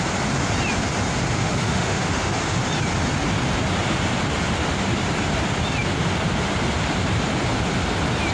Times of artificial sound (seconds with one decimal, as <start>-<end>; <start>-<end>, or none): 1.4-2.6